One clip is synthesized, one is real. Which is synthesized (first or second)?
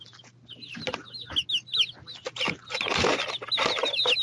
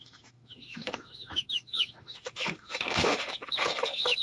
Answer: second